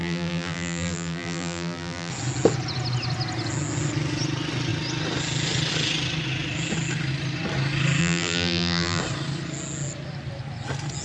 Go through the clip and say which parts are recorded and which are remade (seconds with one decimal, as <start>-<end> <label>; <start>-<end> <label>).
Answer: 0.0-2.1 remade; 2.1-8.0 recorded; 8.0-9.0 remade; 9.0-11.0 recorded